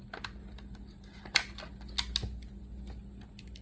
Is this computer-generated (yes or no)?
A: no